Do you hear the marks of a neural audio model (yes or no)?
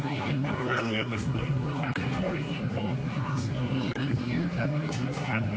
yes